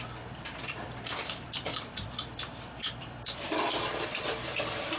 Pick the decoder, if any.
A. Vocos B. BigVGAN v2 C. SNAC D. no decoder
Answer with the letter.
B